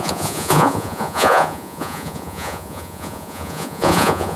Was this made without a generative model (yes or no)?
no